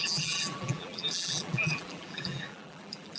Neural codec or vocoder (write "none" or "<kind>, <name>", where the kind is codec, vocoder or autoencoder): vocoder, BigVGAN v2